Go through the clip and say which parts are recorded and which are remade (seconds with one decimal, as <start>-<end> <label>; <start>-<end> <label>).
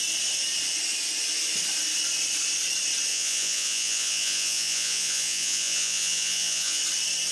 0.0-3.1 recorded; 3.1-6.8 remade; 6.8-7.3 recorded